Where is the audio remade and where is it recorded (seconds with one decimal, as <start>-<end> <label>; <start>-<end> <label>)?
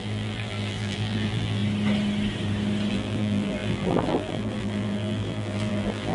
0.0-1.6 remade; 1.6-2.9 recorded; 2.9-6.1 remade